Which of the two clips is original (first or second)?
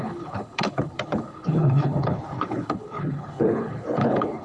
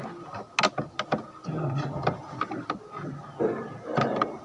second